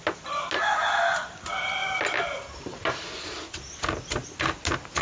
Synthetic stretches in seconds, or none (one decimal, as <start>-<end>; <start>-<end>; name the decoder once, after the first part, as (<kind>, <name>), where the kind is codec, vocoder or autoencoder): none